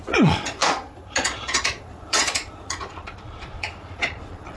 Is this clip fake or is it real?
fake